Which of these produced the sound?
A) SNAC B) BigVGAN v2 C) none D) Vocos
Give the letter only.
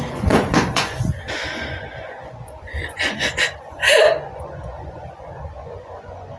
D